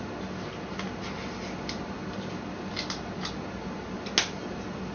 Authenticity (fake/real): real